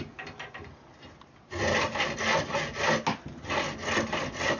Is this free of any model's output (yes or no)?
yes